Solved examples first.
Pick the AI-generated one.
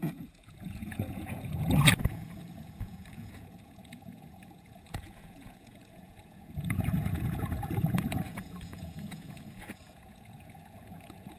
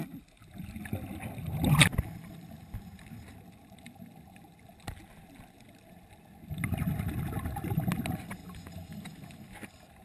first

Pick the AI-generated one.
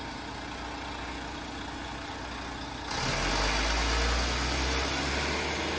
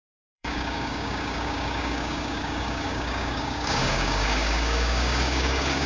second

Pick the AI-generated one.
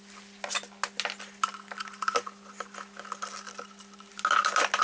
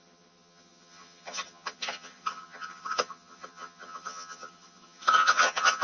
second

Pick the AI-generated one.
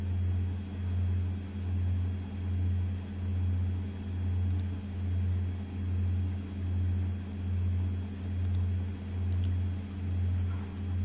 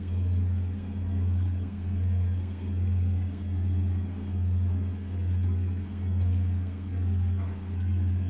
second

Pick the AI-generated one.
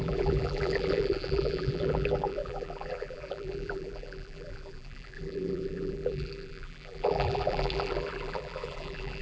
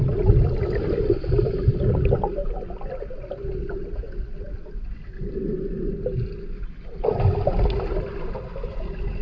first